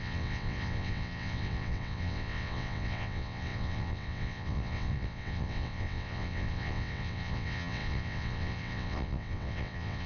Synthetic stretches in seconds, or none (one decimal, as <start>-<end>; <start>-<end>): 0.0-10.1